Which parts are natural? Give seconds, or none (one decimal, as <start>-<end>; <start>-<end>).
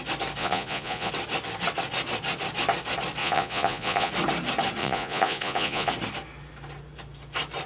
0.0-0.4; 1.1-3.2; 4.1-4.8; 5.9-7.7